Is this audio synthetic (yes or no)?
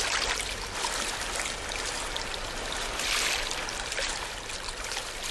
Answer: no